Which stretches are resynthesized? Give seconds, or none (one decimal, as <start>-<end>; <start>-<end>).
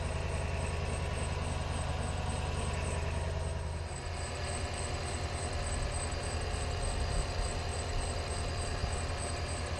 none